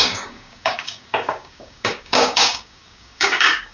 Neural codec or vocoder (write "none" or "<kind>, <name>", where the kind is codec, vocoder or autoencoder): codec, DAC